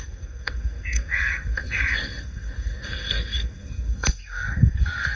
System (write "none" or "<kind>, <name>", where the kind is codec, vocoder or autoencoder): codec, SNAC